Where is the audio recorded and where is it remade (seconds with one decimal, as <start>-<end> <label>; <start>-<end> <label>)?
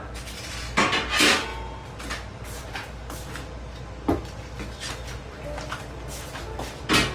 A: 0.0-7.1 recorded